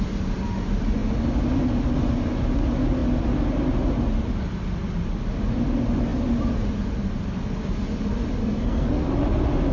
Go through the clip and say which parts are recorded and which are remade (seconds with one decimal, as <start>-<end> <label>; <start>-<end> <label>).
0.0-8.4 recorded; 8.4-9.1 remade; 9.1-9.7 recorded